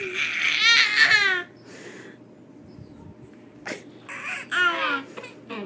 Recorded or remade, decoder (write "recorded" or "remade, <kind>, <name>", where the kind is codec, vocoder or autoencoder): recorded